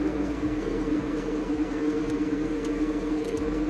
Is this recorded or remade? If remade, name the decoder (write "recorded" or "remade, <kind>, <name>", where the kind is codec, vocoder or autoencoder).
remade, codec, SNAC